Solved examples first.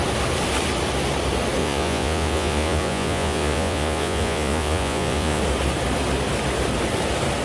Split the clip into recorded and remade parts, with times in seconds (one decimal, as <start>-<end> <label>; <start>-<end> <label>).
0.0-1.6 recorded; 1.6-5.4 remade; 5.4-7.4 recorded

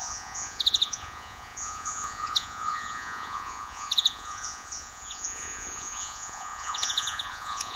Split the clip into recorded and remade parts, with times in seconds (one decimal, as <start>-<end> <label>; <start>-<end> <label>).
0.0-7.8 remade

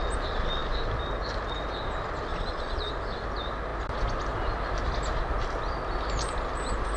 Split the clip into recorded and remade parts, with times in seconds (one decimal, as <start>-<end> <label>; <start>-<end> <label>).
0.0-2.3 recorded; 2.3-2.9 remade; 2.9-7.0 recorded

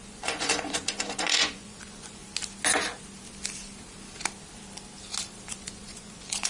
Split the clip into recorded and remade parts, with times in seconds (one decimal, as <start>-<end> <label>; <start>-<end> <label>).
0.0-2.2 remade; 2.2-5.5 recorded; 5.5-6.5 remade

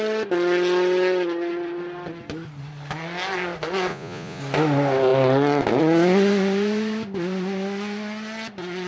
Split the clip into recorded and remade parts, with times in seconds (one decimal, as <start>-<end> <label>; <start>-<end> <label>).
0.0-3.9 recorded; 3.9-4.4 remade; 4.4-8.9 recorded

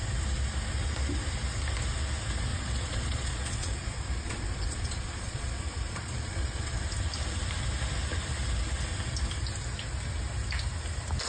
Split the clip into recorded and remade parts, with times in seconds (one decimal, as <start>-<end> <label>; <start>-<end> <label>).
0.0-2.5 recorded; 2.5-6.8 remade; 6.8-11.3 recorded

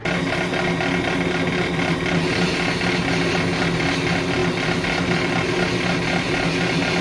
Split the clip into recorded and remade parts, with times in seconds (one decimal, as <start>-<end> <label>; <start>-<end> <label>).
0.0-7.0 recorded